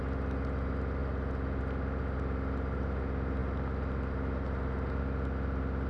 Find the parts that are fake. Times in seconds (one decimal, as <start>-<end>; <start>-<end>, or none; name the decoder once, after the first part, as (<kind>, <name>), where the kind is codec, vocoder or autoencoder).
none